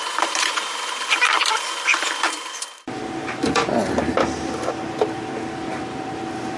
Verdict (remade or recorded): remade